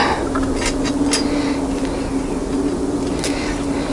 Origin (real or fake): real